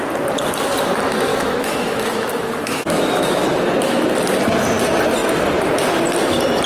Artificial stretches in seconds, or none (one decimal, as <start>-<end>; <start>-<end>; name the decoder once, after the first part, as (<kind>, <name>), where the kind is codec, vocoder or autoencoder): 1.3-3.7 (autoencoder, DAC-VAE)